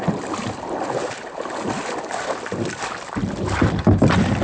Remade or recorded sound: recorded